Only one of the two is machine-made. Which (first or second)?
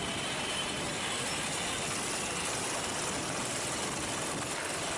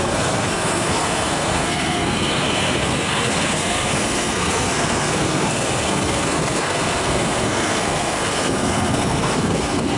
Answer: second